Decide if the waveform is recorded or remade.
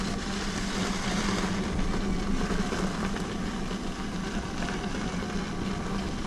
recorded